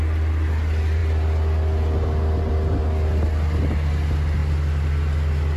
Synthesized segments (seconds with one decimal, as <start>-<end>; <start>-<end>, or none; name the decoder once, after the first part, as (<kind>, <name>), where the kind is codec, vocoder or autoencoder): none